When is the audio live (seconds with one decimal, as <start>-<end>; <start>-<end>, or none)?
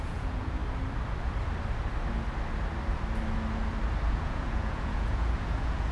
0.6-4.1